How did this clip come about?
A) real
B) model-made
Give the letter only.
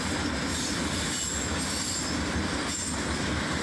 A